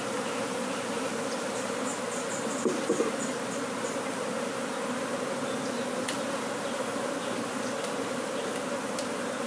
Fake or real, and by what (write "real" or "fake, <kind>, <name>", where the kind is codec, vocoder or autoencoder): real